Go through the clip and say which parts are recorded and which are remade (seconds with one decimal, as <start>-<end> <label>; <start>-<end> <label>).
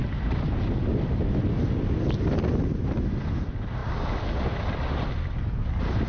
0.0-6.1 recorded